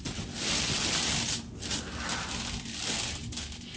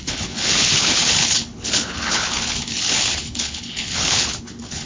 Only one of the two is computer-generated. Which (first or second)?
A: second